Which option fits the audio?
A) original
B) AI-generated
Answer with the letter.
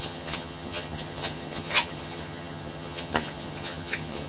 B